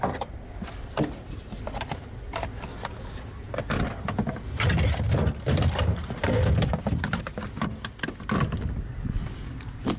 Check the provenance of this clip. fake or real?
real